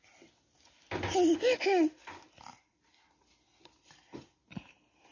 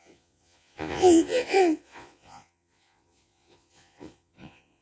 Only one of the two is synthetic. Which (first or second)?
second